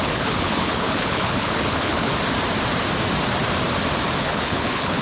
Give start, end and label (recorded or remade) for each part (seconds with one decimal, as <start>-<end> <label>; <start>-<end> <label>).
0.0-2.1 remade; 2.1-4.2 recorded; 4.2-5.0 remade